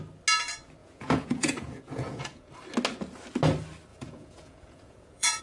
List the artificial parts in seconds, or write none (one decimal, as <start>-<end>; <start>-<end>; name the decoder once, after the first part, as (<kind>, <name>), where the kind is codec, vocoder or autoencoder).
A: 0.8-2.5 (vocoder, Vocos); 3.9-5.4